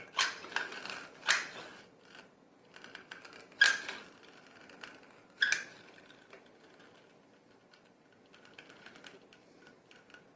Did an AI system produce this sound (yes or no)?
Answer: no